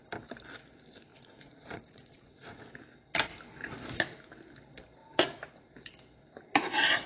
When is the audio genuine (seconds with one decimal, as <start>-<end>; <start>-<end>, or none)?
0.0-1.1; 2.7-7.1

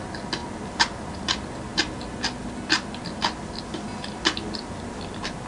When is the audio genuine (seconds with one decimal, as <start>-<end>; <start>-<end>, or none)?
0.0-5.5

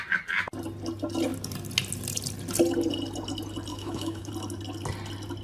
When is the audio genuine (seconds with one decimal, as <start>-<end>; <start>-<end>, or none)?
0.0-3.7; 4.3-5.4

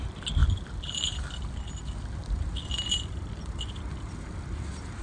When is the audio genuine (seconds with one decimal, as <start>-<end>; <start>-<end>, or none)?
0.0-0.4; 1.7-2.2

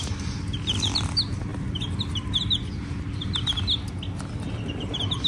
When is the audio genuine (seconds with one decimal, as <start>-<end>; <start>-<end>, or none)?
0.0-5.3

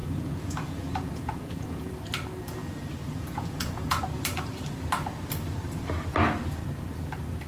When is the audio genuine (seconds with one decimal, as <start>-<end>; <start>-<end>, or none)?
1.9-3.0; 4.0-7.5